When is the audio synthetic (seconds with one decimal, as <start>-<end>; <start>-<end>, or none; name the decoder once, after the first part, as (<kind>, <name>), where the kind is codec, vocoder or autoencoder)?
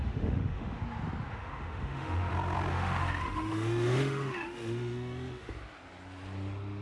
0.0-0.8 (autoencoder, DAC-VAE); 1.3-2.3; 2.7-5.5